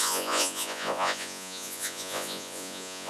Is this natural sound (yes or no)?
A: no